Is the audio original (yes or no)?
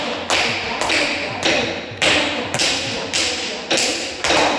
yes